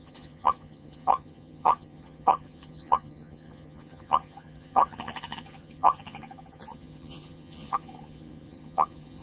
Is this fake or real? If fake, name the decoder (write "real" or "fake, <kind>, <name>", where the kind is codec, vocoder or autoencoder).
fake, vocoder, HiFi-GAN